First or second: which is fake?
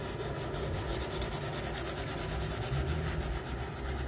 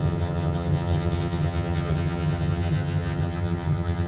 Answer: second